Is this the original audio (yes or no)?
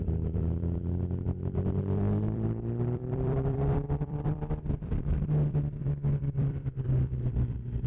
no